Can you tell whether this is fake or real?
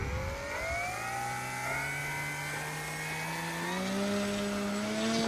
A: real